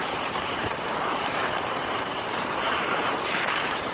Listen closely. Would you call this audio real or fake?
fake